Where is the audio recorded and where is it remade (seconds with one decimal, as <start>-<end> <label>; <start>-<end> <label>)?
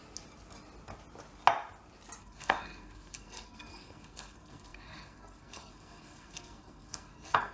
0.0-2.2 recorded; 2.2-7.5 remade